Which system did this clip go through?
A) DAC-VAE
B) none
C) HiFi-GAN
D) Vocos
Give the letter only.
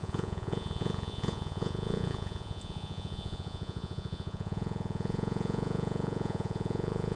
D